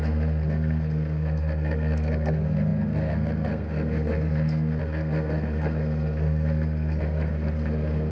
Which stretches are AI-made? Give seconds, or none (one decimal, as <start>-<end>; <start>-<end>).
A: 0.0-8.1